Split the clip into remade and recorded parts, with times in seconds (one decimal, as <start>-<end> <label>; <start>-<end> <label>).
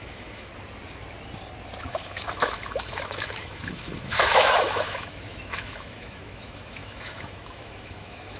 0.0-0.5 remade; 0.5-1.8 recorded; 1.8-8.4 remade